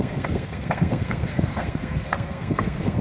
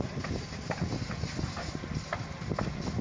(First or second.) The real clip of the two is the second